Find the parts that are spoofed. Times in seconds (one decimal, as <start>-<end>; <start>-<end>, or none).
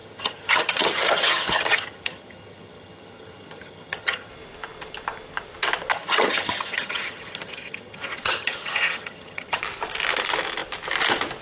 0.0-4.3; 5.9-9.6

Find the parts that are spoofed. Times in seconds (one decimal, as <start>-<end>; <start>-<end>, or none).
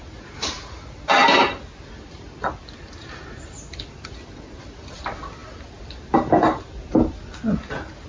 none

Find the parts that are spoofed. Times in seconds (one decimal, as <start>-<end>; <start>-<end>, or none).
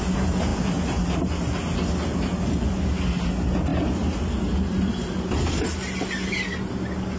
none